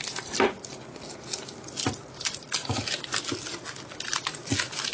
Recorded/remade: recorded